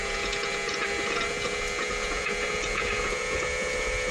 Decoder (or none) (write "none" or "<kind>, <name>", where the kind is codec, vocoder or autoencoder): vocoder, Vocos